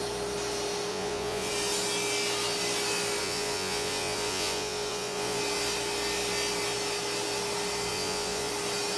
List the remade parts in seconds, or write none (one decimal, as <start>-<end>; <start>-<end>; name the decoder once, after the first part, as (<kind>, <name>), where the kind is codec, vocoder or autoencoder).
0.9-1.5 (vocoder, Vocos); 3.2-5.4; 7.9-8.5

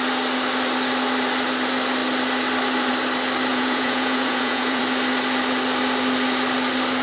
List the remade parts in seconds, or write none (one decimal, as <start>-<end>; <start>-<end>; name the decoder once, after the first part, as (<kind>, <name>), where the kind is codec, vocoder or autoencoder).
3.5-4.8 (vocoder, Vocos)

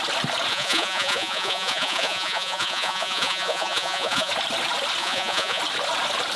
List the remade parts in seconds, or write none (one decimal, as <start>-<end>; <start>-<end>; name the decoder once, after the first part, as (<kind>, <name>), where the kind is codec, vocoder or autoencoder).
0.5-4.3 (vocoder, Vocos); 5.0-5.6

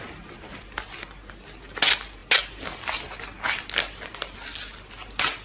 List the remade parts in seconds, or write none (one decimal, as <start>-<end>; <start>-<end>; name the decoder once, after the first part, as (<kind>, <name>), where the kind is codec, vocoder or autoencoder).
none

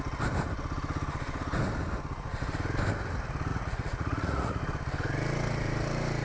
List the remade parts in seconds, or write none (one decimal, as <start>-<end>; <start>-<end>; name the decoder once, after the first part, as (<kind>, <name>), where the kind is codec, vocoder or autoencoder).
3.5-4.6 (vocoder, Vocos)